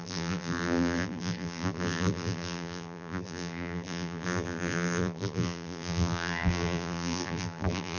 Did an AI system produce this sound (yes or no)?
yes